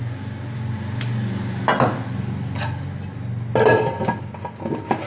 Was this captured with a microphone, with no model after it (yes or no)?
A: yes